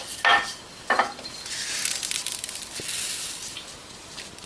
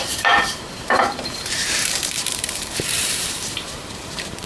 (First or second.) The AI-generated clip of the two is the second